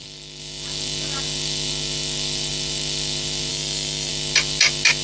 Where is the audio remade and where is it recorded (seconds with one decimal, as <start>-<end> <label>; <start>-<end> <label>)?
0.0-3.5 recorded; 3.5-4.1 remade; 4.1-5.0 recorded